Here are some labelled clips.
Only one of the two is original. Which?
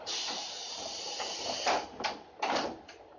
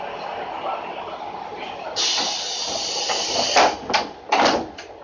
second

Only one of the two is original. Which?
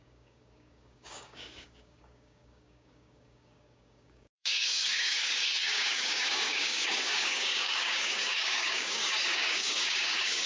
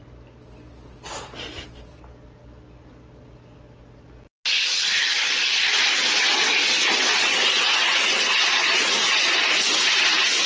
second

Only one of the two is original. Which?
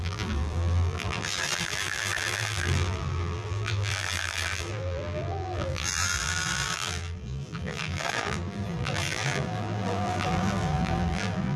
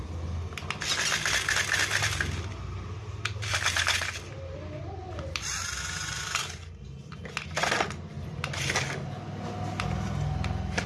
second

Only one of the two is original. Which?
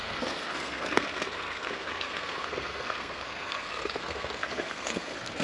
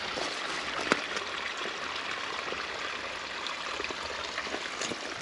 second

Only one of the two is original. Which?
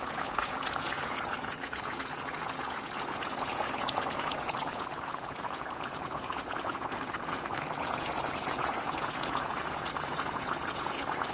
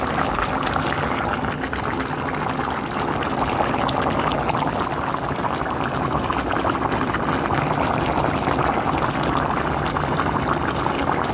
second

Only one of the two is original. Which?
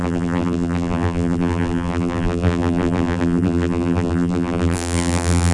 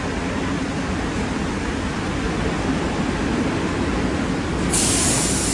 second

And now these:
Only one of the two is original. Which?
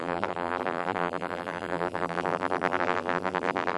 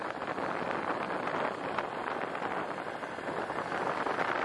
second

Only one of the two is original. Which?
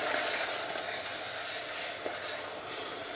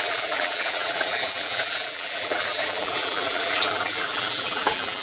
first